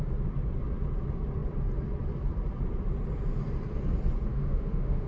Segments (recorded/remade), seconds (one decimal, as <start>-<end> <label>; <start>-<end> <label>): 0.0-4.3 recorded; 4.3-5.1 remade